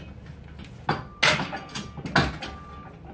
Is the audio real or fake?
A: real